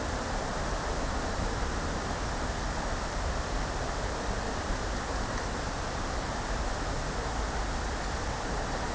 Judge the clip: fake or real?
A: fake